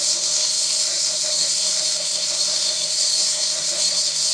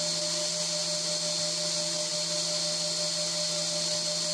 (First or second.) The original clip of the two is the second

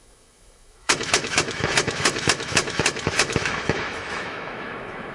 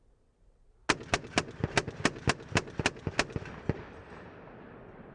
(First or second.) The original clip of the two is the second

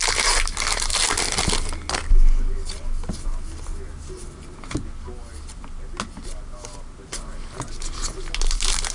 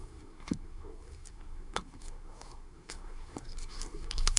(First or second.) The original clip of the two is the first